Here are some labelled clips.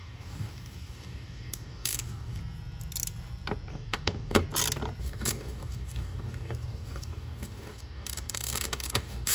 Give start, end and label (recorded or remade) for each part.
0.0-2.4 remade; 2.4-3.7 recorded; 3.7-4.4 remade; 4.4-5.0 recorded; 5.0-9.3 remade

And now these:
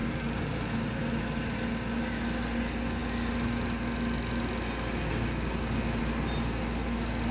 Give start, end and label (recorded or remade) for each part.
0.0-7.3 recorded

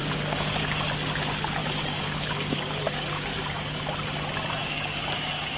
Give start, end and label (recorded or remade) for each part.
0.0-0.6 remade; 0.6-1.6 recorded; 1.6-3.4 remade; 3.4-4.6 recorded; 4.6-5.6 remade